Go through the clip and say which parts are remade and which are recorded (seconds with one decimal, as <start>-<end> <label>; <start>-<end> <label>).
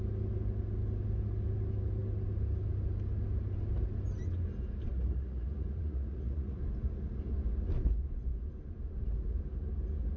0.0-4.9 recorded; 4.9-6.6 remade; 6.6-10.2 recorded